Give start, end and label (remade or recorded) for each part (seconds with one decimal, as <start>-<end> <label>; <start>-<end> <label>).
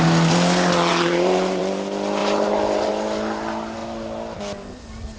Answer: 0.0-0.9 recorded; 0.9-1.6 remade; 1.6-2.2 recorded; 2.2-2.9 remade; 2.9-5.2 recorded